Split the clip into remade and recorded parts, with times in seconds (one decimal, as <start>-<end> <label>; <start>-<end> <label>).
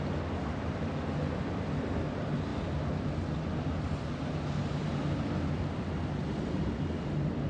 0.0-7.5 recorded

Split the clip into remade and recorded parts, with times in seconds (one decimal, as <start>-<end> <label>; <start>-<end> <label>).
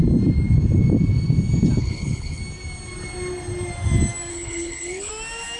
0.0-1.8 recorded; 1.8-2.4 remade; 2.4-4.3 recorded; 4.3-5.1 remade; 5.1-5.6 recorded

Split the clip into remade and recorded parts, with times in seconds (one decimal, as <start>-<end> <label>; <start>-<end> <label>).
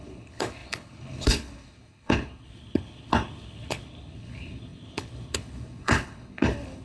0.0-6.8 remade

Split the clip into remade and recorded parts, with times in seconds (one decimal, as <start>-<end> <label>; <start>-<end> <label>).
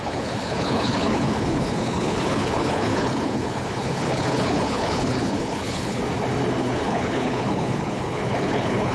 0.0-6.0 remade; 6.0-6.6 recorded; 6.6-8.9 remade